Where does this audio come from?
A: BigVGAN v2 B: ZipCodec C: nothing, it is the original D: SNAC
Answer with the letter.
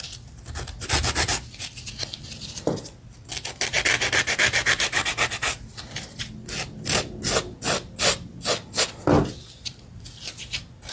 C